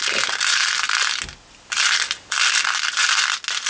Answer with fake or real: real